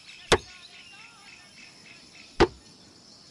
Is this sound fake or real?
real